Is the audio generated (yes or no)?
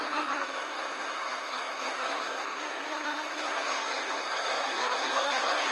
yes